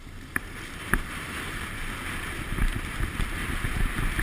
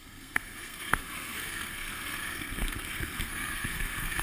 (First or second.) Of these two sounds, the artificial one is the second